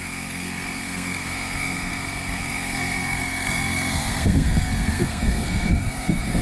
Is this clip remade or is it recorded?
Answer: remade